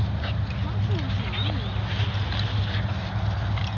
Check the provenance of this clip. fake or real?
real